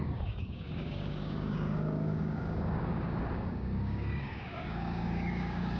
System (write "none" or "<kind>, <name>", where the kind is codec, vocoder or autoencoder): codec, DAC